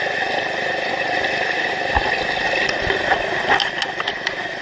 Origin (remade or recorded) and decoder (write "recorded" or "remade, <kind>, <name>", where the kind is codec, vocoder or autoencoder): recorded